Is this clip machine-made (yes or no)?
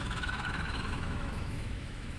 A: yes